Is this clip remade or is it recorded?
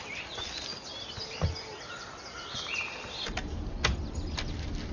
recorded